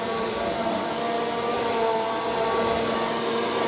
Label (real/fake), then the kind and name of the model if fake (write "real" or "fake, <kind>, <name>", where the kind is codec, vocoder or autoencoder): real